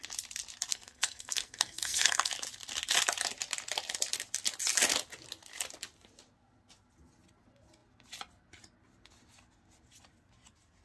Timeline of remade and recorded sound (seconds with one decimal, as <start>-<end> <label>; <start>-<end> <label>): 0.0-0.7 recorded; 0.7-2.3 remade; 2.3-10.8 recorded

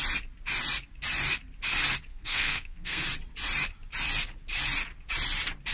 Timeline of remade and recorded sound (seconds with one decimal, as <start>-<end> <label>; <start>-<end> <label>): 0.0-2.1 recorded; 2.1-3.0 remade; 3.0-5.7 recorded

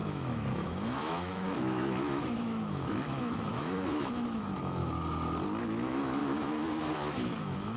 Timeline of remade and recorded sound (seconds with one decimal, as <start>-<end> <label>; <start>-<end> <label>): 0.0-4.8 remade; 4.8-5.6 recorded; 5.6-7.8 remade

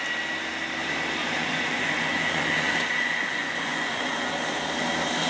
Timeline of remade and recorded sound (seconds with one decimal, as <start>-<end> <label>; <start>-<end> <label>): 0.0-1.2 recorded; 1.2-4.3 remade; 4.3-5.3 recorded

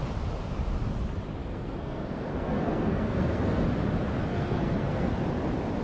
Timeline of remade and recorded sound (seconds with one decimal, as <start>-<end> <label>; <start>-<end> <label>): 0.0-1.4 recorded; 1.4-3.6 remade; 3.6-4.3 recorded; 4.3-5.1 remade; 5.1-5.8 recorded